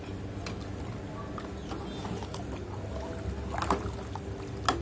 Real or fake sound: real